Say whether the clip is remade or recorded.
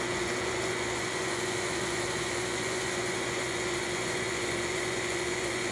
remade